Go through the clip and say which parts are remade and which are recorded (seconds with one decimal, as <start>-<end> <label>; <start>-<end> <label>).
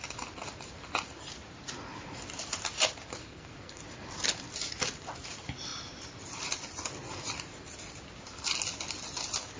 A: 0.0-3.2 recorded; 3.2-3.8 remade; 3.8-9.6 recorded